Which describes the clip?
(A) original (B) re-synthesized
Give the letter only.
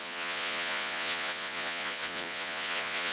B